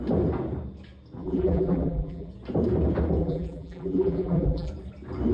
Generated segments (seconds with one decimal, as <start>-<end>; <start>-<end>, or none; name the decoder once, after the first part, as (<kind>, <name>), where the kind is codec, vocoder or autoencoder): 1.2-2.3 (vocoder, BigVGAN v2); 3.2-4.7